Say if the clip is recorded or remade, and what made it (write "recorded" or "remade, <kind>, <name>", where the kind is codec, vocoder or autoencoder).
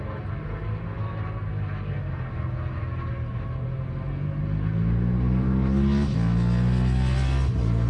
recorded